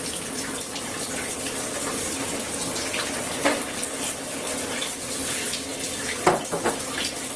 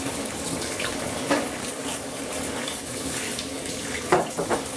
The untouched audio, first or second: first